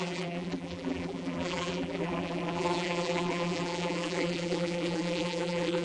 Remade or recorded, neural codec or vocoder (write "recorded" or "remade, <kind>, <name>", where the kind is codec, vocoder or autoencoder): remade, vocoder, BigVGAN v2